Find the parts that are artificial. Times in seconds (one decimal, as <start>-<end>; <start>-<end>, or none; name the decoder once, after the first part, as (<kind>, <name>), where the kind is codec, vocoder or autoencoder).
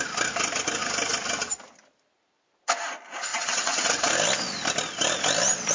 3.3-4.1 (vocoder, WaveNeXt)